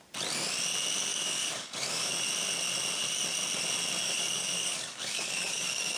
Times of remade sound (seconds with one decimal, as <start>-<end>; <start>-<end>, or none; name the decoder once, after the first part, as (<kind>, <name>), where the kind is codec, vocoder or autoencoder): 1.1-2.1 (codec, DAC); 4.0-6.0